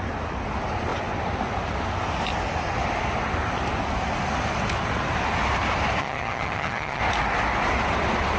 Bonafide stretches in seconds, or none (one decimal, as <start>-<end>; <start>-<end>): 0.0-6.0; 7.0-8.4